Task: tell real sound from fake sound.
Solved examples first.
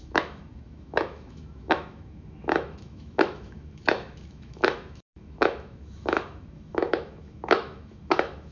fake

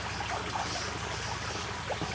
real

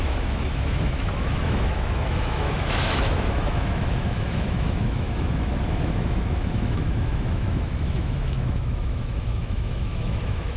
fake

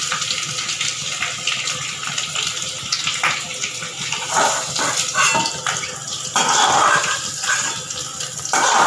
real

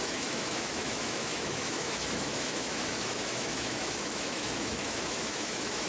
fake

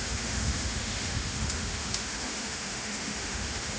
fake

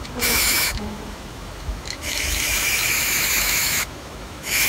fake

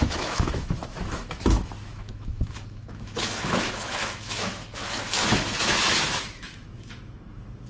fake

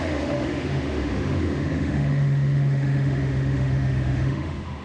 fake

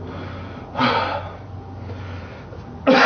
real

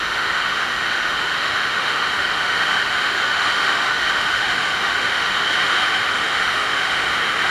fake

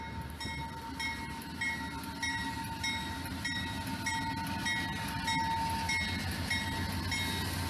real